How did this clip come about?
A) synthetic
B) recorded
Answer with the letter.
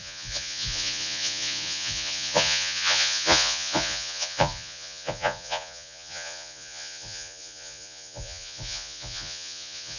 A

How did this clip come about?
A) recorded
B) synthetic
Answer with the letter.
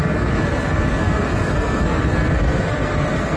B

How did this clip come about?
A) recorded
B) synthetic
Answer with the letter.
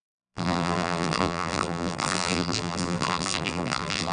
B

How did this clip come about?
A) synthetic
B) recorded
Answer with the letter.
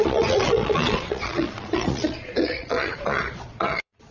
A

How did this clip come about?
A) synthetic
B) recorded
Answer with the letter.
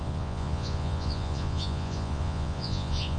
A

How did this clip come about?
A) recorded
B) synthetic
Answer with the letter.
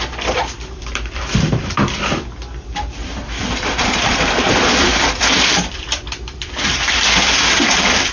B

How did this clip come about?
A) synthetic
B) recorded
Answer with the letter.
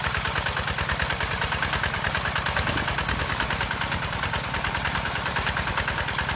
B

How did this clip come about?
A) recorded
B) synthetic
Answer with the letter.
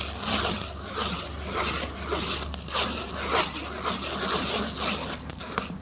A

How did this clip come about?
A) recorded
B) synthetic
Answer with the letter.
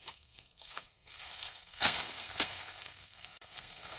B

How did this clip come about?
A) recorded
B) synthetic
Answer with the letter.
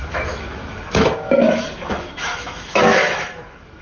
B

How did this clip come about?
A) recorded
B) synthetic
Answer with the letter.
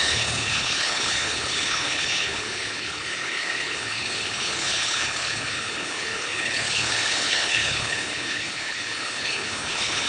B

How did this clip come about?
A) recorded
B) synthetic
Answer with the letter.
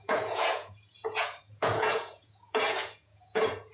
B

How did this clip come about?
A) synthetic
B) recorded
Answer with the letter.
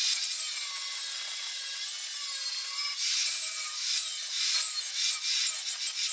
B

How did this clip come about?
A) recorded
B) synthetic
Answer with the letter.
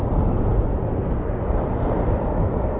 A